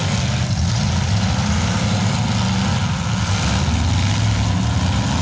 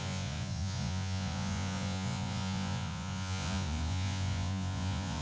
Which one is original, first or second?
first